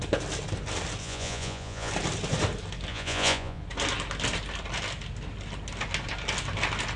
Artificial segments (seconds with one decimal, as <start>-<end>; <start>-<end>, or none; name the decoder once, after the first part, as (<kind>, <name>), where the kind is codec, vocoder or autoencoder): 1.0-1.9 (vocoder, Vocos); 2.9-3.6